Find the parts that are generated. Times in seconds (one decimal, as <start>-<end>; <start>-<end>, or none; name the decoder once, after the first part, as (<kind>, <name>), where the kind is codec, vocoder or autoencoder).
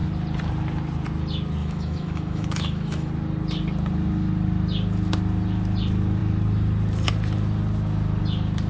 1.6-3.1 (autoencoder, DAC-VAE)